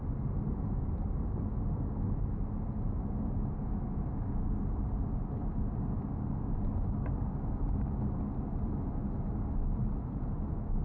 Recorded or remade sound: recorded